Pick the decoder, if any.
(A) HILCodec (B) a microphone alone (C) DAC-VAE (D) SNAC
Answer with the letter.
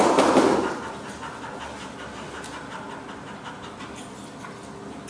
B